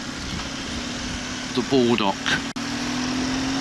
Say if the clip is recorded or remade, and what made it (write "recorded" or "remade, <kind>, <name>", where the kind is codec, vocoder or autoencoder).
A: recorded